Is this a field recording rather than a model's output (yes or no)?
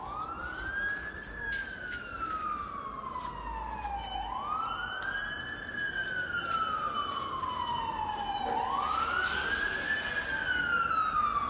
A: yes